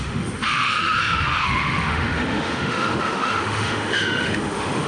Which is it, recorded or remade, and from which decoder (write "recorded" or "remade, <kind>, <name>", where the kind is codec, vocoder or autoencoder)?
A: remade, autoencoder, DAC-VAE